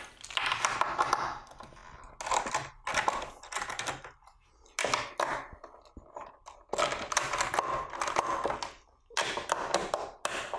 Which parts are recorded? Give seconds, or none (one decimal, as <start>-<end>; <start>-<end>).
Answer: 0.0-2.9; 4.0-5.3; 8.5-10.6